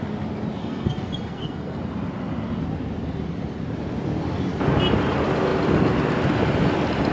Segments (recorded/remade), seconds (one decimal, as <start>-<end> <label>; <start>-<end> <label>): 0.0-0.6 recorded; 0.6-1.8 remade; 1.8-7.1 recorded